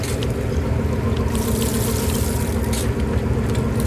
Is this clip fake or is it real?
real